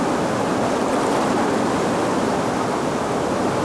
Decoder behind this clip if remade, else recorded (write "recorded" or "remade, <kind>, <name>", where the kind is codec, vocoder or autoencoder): recorded